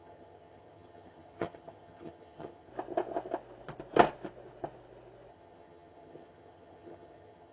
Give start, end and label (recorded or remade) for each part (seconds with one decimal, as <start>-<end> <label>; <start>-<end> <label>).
0.0-2.7 remade; 2.7-5.3 recorded; 5.3-7.5 remade